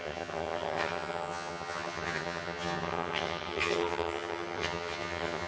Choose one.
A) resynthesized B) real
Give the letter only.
A